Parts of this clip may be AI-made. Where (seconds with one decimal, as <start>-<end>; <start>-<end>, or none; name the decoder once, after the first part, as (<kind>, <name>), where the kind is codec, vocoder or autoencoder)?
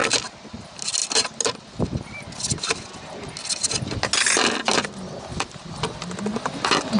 none